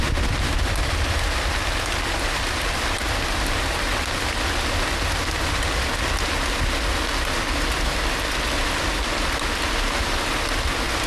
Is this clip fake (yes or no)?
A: no